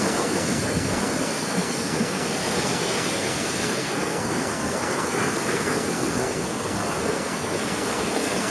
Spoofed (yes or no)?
yes